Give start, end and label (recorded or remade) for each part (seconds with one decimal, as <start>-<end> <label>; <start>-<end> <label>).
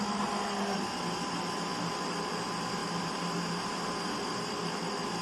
0.0-2.8 recorded; 2.8-4.1 remade; 4.1-5.2 recorded